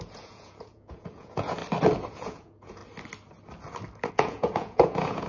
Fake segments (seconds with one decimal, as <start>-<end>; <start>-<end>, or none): 0.0-1.6; 2.1-2.8; 4.1-5.3